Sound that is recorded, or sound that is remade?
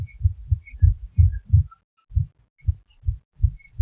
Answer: recorded